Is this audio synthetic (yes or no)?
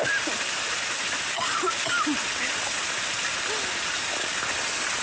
no